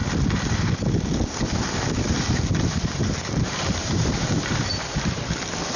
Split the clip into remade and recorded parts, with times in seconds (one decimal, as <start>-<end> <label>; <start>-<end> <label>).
0.0-3.0 recorded; 3.0-4.7 remade; 4.7-5.8 recorded